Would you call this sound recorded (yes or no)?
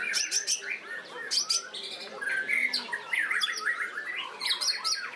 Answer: yes